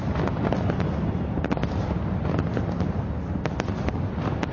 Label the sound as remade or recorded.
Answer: recorded